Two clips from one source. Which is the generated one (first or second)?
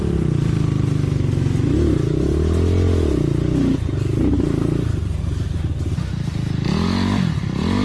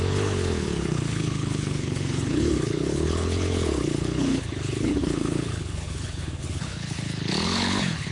second